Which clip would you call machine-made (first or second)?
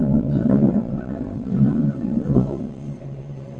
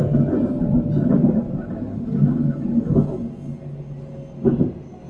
first